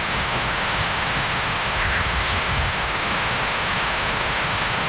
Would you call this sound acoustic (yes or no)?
no